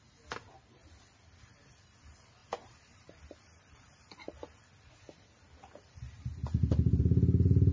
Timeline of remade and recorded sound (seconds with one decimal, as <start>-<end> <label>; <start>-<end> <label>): 0.0-2.4 recorded; 2.4-3.2 remade; 3.2-7.7 recorded